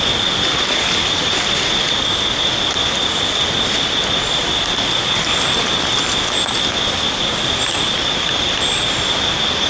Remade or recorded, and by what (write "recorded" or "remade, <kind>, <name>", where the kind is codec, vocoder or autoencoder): recorded